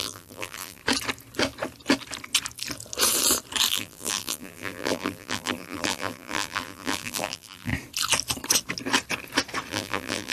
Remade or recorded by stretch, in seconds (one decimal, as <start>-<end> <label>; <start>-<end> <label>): 0.0-0.8 remade; 0.8-3.7 recorded; 3.7-7.7 remade; 7.7-9.7 recorded; 9.7-10.3 remade